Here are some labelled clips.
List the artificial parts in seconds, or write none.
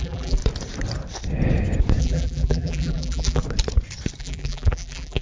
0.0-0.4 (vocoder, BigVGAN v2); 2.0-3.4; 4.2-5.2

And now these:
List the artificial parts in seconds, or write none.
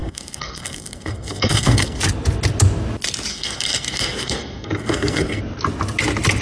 0.0-2.0 (codec, SNAC); 3.3-5.4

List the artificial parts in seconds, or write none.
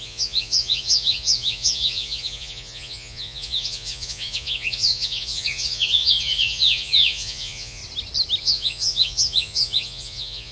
0.0-7.8 (vocoder, Vocos); 8.4-10.5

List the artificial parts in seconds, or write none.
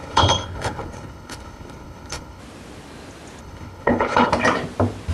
0.0-2.4 (codec, HILCodec); 3.4-4.3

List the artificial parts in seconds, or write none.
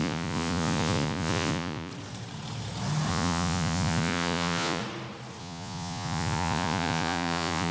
0.0-1.9 (vocoder, Vocos); 3.1-4.8; 5.4-7.7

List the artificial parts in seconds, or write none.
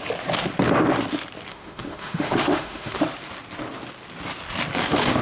1.5-3.0 (autoencoder, DAC-VAE)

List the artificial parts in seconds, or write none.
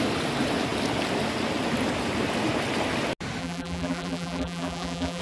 3.4-5.2 (vocoder, BigVGAN v2)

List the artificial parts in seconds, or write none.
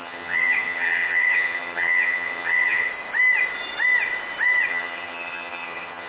0.0-2.9 (vocoder, HiFi-GAN); 4.7-6.1